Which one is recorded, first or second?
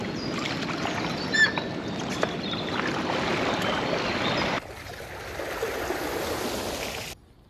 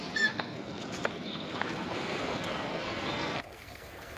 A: first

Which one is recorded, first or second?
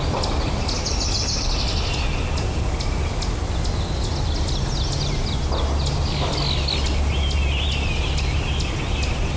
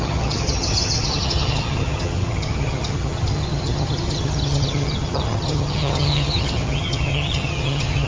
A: first